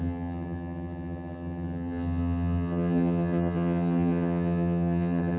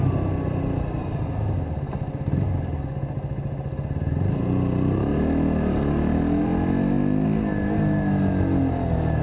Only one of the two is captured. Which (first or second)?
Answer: second